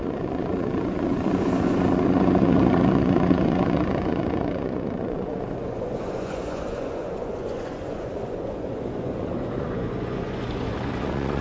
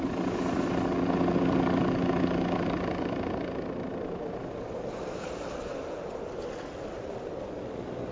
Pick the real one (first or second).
second